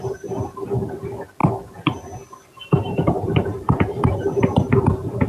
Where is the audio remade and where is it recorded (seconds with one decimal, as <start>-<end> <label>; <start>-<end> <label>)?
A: 0.0-3.0 recorded; 3.0-5.3 remade